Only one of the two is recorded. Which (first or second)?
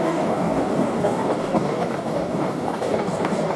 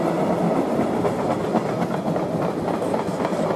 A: second